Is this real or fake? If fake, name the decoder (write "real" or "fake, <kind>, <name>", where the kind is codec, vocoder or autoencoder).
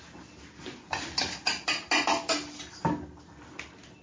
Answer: real